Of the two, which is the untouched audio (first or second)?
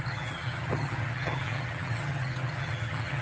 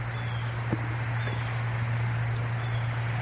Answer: second